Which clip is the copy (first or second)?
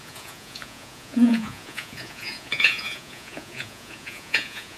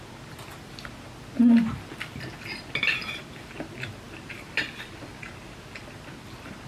first